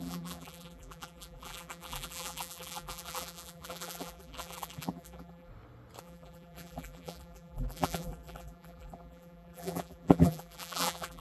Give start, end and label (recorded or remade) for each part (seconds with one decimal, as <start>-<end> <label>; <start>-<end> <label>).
0.0-5.5 remade; 5.5-6.0 recorded; 6.0-11.2 remade